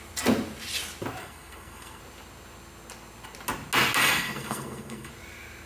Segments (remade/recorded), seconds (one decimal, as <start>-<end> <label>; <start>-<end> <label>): 0.0-1.2 recorded; 1.2-2.0 remade; 2.0-4.0 recorded; 4.0-5.1 remade; 5.1-5.7 recorded